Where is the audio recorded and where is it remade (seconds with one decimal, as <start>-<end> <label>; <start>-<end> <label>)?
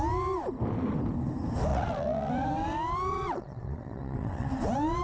0.0-1.7 recorded; 1.7-2.3 remade; 2.3-3.1 recorded; 3.1-4.5 remade; 4.5-5.0 recorded